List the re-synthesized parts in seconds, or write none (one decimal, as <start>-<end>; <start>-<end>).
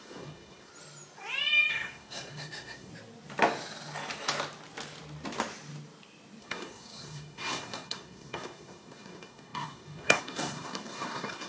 0.0-0.7; 1.7-2.9; 6.4-11.5